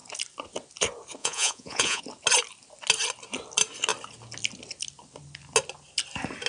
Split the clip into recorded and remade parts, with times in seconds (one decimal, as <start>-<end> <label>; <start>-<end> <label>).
0.0-1.2 recorded; 1.2-2.0 remade; 2.0-6.5 recorded